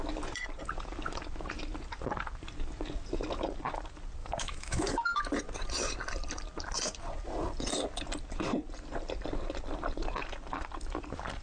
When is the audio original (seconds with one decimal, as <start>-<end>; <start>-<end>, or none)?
0.0-4.2; 5.2-11.4